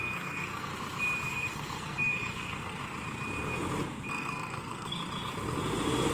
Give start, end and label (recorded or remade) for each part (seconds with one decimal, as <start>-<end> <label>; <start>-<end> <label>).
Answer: 0.0-0.7 remade; 0.7-1.3 recorded; 1.3-2.8 remade; 2.8-4.1 recorded; 4.1-5.0 remade; 5.0-6.1 recorded